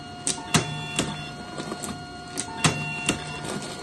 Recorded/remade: recorded